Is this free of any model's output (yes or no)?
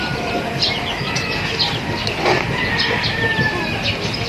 yes